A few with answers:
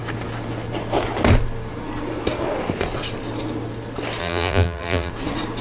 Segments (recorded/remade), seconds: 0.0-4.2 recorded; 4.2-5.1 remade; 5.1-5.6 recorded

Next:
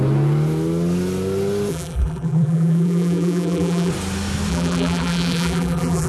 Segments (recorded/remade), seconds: 0.0-1.7 recorded; 1.7-3.9 remade; 3.9-4.5 recorded; 4.5-6.1 remade